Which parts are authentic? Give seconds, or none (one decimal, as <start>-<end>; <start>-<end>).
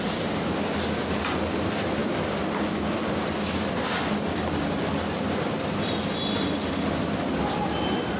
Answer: 2.0-2.7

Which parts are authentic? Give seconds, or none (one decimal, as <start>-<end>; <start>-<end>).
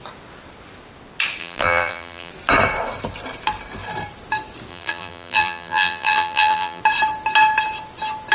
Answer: 0.0-1.4; 2.3-4.7; 6.8-8.3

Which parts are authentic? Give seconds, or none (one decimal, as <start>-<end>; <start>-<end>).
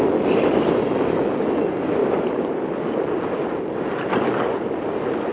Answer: 0.0-2.0; 2.7-3.4; 3.9-5.3